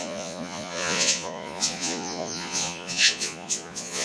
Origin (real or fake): fake